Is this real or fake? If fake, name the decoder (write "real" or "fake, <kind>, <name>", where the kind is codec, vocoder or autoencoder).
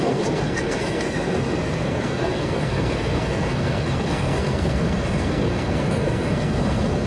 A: fake, codec, SNAC